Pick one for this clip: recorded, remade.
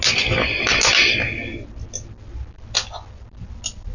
recorded